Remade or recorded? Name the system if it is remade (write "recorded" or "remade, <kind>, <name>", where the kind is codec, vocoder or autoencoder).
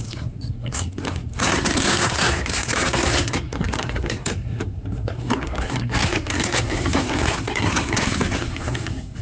remade, codec, SNAC